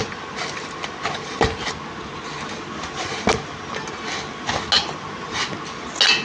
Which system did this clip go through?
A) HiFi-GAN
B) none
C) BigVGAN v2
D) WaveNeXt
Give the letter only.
B